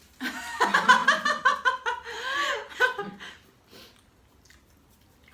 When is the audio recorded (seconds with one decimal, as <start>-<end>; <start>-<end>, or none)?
0.0-5.3